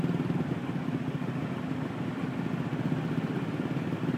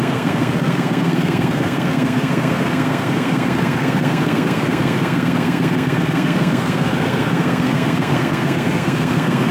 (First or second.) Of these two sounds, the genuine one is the first